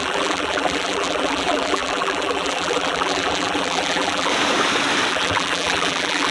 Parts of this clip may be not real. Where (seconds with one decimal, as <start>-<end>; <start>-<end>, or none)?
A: 0.0-4.3; 5.1-6.3